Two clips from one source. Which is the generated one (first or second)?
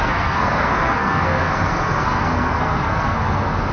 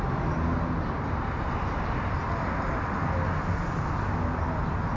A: first